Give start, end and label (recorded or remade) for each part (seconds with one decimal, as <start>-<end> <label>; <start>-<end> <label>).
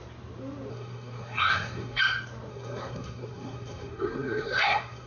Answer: 0.0-0.7 recorded; 0.7-2.0 remade; 2.0-2.5 recorded; 2.5-5.1 remade